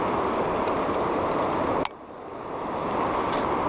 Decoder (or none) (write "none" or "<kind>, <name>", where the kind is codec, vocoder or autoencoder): none